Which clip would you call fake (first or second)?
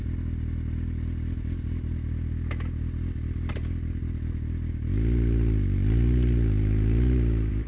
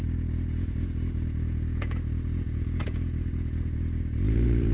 second